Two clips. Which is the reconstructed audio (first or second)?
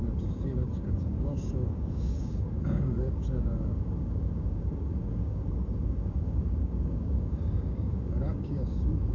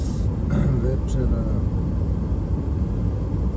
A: first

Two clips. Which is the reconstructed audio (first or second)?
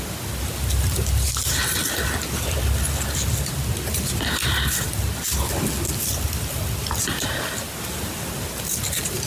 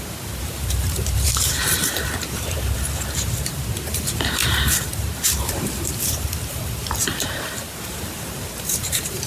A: second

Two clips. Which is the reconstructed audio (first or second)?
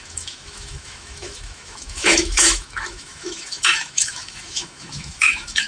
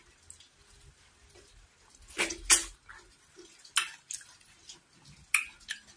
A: first